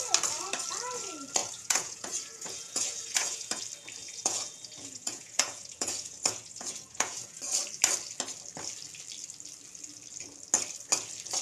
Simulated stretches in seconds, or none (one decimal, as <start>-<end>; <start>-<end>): 1.4-3.6; 4.0-7.4